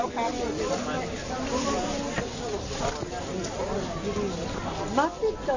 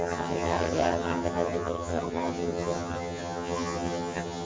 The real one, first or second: first